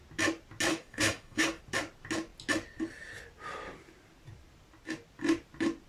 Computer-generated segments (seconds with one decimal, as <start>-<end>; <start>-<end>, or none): 0.7-1.6